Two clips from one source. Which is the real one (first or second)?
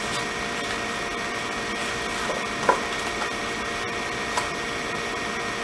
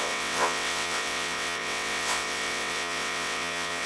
first